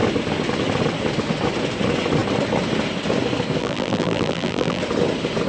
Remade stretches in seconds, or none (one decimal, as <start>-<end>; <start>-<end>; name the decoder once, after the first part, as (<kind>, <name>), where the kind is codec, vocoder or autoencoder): 3.6-4.8 (vocoder, BigVGAN v2)